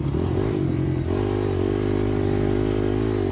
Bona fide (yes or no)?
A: yes